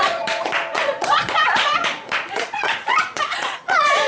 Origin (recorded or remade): remade